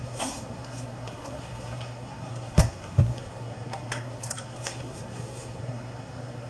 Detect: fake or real fake